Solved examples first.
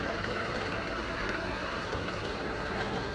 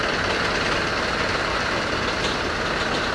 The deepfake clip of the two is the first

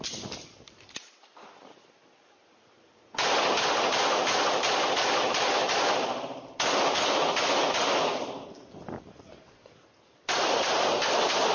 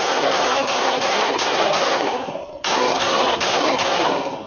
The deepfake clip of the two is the second